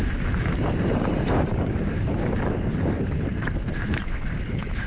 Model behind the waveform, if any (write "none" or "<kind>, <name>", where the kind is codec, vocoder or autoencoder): vocoder, BigVGAN v2